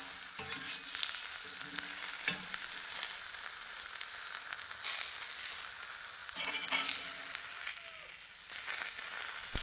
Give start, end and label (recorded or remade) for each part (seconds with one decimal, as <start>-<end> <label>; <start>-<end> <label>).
0.0-9.6 recorded

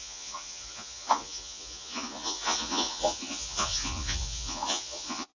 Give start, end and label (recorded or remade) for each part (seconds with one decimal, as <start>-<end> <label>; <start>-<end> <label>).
0.0-5.4 remade

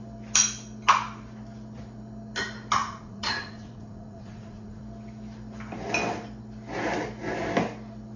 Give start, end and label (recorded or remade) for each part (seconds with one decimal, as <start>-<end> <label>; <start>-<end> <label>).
0.0-2.8 recorded; 2.8-4.8 remade; 4.8-8.2 recorded

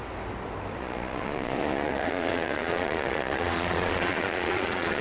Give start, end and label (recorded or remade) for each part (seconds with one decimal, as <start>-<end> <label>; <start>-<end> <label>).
0.0-0.8 recorded; 0.8-5.0 remade